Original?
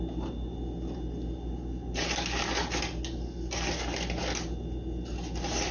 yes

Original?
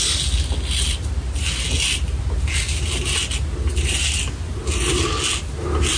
yes